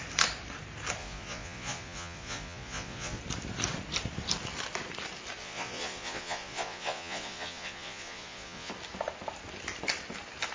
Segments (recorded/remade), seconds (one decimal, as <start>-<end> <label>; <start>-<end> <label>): 0.0-1.0 recorded; 1.0-3.2 remade; 3.2-5.4 recorded; 5.4-8.7 remade; 8.7-10.5 recorded